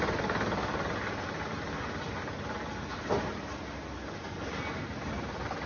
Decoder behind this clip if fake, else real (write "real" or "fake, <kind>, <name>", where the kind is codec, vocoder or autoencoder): real